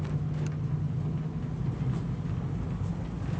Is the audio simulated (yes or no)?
no